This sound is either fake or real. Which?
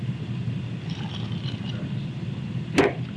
real